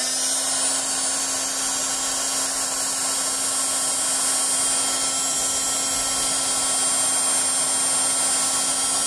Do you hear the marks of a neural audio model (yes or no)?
no